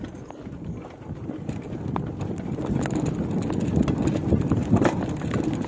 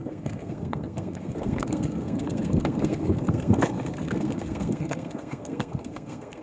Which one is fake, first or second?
second